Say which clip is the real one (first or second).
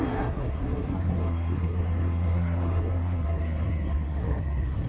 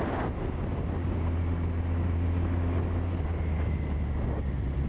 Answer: second